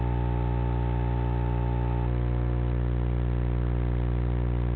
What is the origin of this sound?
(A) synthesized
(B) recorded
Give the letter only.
B